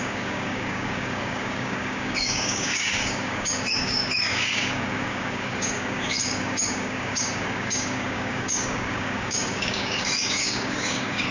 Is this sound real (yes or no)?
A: no